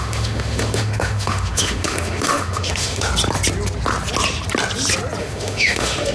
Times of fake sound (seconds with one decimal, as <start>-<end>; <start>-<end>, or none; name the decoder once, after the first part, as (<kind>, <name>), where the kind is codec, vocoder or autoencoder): 0.0-3.1 (autoencoder, DAC-VAE); 5.2-6.1